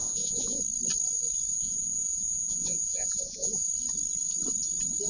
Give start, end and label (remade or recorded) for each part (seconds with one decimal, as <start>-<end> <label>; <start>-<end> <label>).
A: 0.0-0.6 remade; 0.6-1.5 recorded; 1.5-3.7 remade; 3.7-5.1 recorded